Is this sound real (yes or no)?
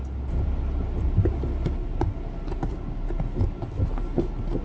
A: yes